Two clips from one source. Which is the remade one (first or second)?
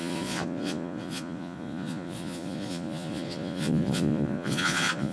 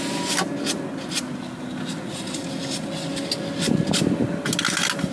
first